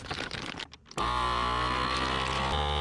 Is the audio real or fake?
real